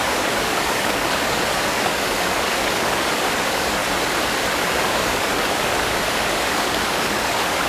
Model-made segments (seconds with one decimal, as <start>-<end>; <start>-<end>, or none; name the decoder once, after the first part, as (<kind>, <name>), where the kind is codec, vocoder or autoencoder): 0.0-3.8 (codec, DAC); 4.5-7.7